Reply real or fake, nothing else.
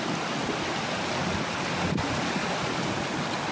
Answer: real